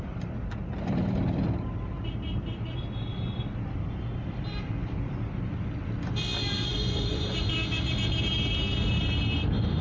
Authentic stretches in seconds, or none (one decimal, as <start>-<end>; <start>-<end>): 0.0-6.7; 7.5-9.8